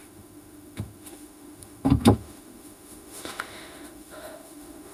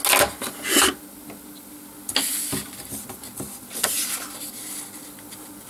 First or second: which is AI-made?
first